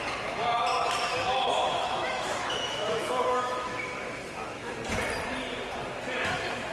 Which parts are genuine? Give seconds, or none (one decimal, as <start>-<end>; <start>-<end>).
0.0-1.6; 4.7-6.7

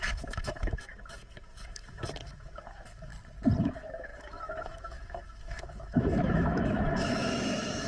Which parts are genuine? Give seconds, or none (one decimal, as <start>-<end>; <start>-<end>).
3.1-3.6